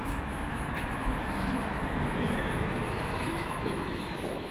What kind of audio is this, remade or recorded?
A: remade